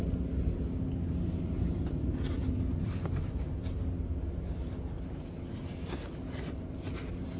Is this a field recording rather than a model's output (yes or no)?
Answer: yes